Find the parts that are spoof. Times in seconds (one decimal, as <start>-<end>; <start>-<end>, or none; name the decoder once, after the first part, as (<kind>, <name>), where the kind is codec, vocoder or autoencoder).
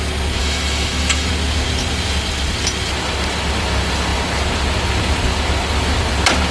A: 0.4-1.3 (autoencoder, DAC-VAE)